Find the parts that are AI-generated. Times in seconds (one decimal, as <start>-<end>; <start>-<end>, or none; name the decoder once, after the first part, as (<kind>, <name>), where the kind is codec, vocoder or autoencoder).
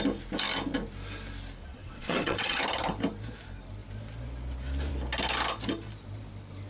1.7-2.6 (vocoder, WaveNeXt)